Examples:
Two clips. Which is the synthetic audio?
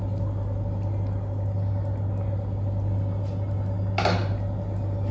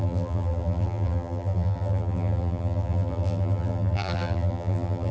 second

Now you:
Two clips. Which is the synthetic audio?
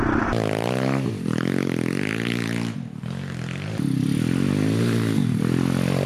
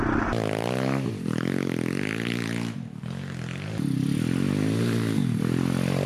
first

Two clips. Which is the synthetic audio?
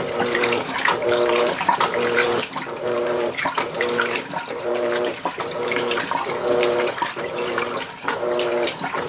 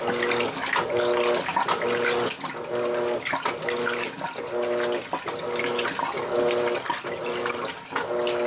first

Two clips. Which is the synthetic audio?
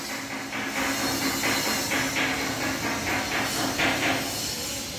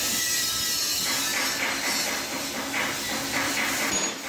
second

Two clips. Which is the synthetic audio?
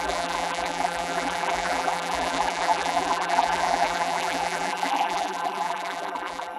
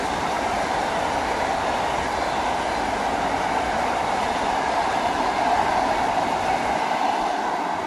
first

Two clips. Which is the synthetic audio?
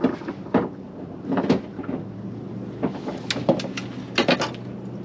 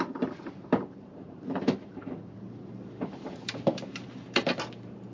second